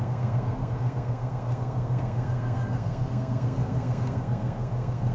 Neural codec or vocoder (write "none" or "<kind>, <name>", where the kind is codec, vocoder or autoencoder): codec, SNAC